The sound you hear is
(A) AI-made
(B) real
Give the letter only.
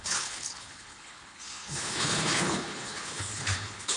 A